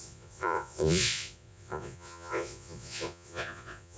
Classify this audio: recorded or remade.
remade